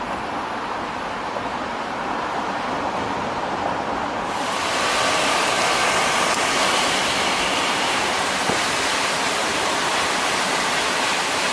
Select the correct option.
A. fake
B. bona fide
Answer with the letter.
A